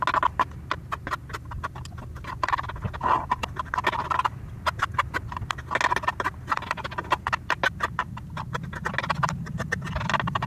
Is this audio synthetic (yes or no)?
no